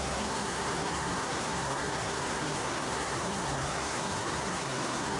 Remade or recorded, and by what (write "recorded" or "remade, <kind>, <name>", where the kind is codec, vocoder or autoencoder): remade, codec, SNAC